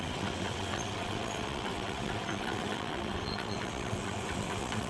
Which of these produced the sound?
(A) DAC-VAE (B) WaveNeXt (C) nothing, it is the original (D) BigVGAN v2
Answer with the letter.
B